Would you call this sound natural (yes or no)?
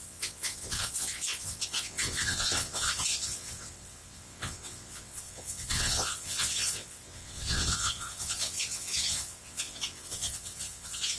no